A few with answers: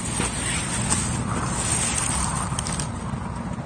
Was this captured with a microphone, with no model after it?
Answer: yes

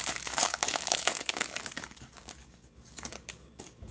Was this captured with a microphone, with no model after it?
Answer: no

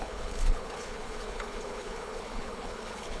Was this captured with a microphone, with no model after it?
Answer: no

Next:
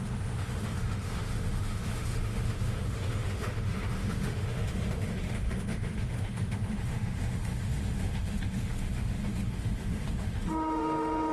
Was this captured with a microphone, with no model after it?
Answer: no